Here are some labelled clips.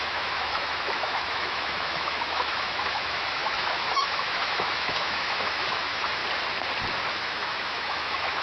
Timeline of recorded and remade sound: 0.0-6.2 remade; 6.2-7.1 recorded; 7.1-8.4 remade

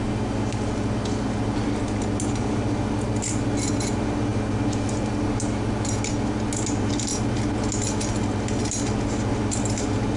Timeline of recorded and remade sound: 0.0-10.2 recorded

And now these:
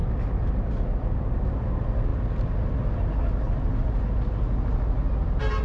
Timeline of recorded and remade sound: 0.0-5.6 recorded

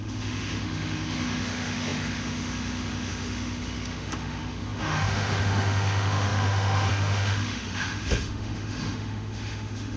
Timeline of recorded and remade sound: 0.0-10.0 remade

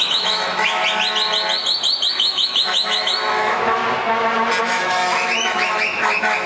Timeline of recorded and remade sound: 0.0-0.8 remade; 0.8-2.1 recorded; 2.1-3.8 remade; 3.8-4.6 recorded; 4.6-6.5 remade

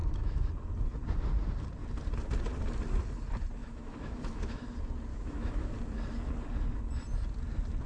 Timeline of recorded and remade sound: 0.0-0.5 remade; 0.5-3.6 recorded; 3.6-4.6 remade; 4.6-5.1 recorded; 5.1-5.7 remade; 5.7-7.9 recorded

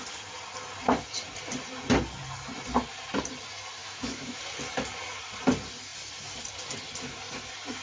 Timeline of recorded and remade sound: 0.0-3.8 recorded; 3.8-4.4 remade; 4.4-7.8 recorded